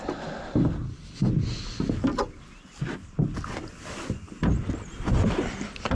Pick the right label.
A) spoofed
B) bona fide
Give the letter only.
B